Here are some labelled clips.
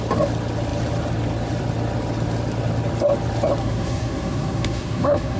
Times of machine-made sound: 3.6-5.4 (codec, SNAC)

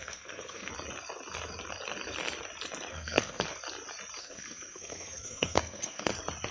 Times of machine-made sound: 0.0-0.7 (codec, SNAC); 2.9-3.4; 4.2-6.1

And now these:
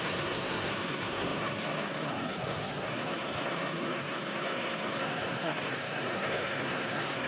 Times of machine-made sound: 0.0-7.3 (codec, SNAC)

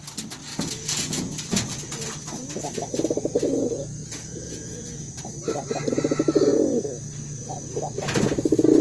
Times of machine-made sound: 0.5-2.1 (vocoder, Vocos); 4.0-5.2